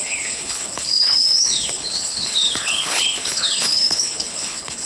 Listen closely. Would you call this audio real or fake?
fake